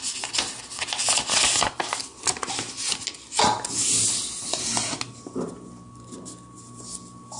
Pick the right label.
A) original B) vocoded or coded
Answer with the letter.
A